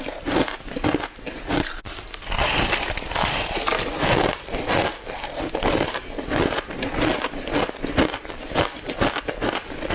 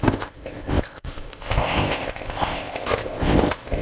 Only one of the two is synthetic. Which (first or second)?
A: second